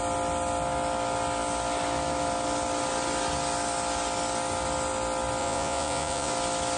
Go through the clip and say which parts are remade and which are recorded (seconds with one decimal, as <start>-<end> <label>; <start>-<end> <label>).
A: 0.0-5.4 recorded; 5.4-6.3 remade; 6.3-6.8 recorded